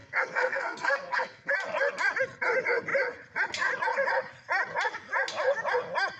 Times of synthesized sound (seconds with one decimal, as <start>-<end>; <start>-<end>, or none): 0.0-1.5